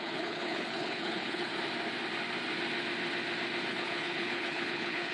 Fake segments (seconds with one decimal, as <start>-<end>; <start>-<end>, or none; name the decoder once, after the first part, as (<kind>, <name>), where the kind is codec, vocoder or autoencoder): 0.0-1.5 (codec, HILCodec); 3.7-5.1